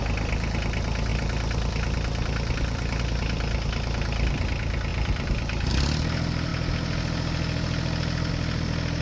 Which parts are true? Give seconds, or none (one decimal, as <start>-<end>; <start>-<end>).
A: 0.0-9.0